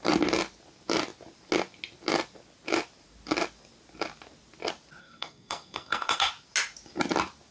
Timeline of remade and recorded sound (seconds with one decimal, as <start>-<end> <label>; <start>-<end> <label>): 0.0-5.0 recorded; 5.0-6.3 remade; 6.3-7.5 recorded